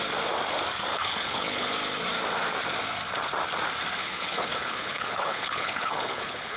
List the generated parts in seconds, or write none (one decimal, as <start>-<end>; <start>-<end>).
0.9-1.7; 4.0-6.6